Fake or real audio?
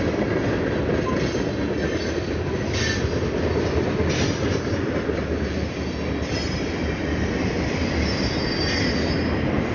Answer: real